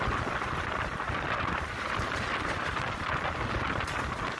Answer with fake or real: real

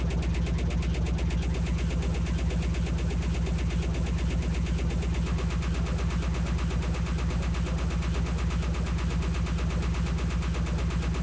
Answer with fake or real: real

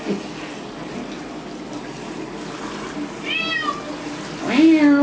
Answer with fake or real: real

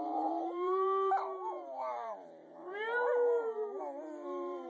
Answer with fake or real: fake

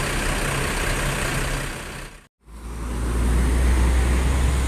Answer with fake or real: real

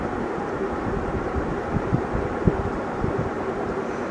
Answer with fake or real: fake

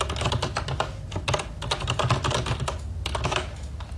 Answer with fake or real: real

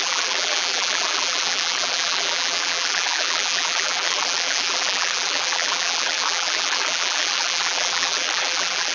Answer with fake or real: fake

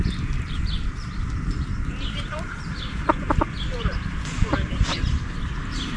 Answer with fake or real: fake